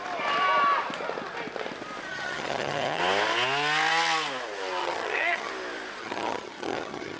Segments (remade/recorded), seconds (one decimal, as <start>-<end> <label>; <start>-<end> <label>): 0.0-2.1 recorded; 2.1-3.0 remade; 3.0-4.8 recorded; 4.8-5.5 remade; 5.5-6.0 recorded; 6.0-7.2 remade